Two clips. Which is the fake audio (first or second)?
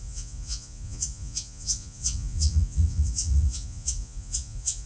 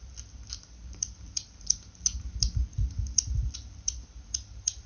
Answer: first